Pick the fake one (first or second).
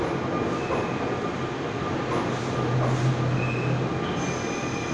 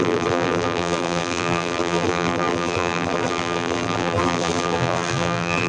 second